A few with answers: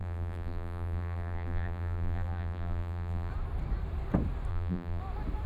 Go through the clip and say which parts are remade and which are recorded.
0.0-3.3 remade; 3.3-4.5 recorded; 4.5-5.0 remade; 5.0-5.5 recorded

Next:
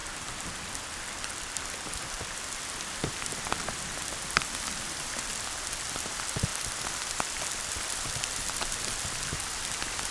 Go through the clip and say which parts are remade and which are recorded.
0.0-6.5 remade; 6.5-7.7 recorded; 7.7-10.1 remade